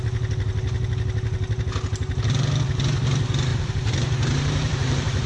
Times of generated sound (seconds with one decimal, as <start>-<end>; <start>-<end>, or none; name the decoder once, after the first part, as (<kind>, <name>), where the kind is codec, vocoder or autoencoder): 3.5-5.3 (vocoder, BigVGAN v2)